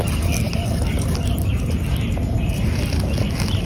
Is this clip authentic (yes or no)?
yes